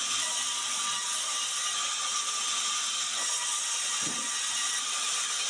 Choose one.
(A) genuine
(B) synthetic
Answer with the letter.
A